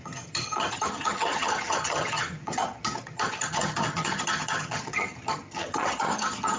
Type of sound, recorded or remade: remade